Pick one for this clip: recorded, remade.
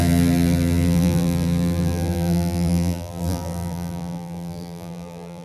remade